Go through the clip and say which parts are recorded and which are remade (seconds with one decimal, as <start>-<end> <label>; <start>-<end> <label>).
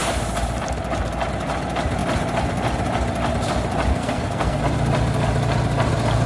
0.0-3.9 recorded; 3.9-4.6 remade; 4.6-6.3 recorded